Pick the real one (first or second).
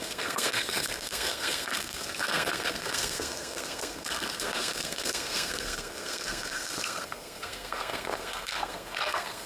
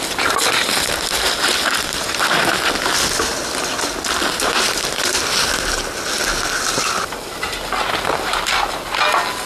second